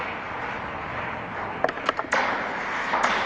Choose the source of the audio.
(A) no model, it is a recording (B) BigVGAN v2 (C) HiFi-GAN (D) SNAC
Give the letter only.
A